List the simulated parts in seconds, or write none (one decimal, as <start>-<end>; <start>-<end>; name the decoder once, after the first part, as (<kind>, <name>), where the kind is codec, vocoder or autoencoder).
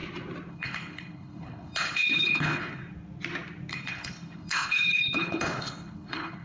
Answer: 0.5-2.8 (codec, HILCodec); 3.7-6.4